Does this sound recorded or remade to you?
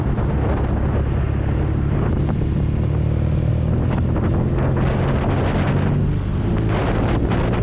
recorded